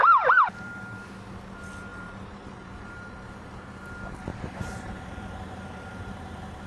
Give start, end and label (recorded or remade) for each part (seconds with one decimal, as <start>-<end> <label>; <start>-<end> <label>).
0.0-1.9 recorded; 1.9-3.8 remade; 3.8-4.3 recorded; 4.3-6.7 remade